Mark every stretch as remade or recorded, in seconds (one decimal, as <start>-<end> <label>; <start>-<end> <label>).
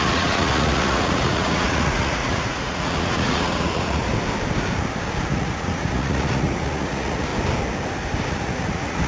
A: 0.0-4.1 remade; 4.1-5.3 recorded; 5.3-7.3 remade; 7.3-8.3 recorded; 8.3-9.1 remade